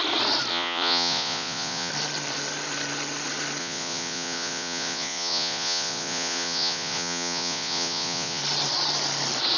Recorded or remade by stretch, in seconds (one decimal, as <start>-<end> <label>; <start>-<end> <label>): 0.0-0.5 recorded; 0.5-1.9 remade; 1.9-3.6 recorded; 3.6-8.4 remade; 8.4-9.6 recorded